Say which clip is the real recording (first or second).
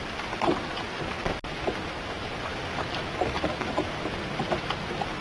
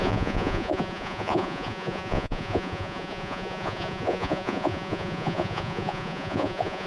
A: first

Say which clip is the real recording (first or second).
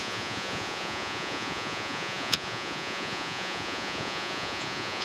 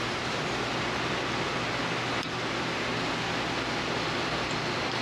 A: second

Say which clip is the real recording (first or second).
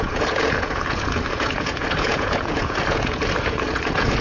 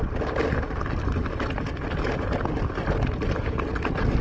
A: second